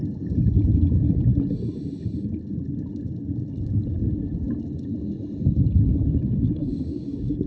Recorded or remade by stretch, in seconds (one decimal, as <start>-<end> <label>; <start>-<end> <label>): 0.0-5.9 recorded; 5.9-7.5 remade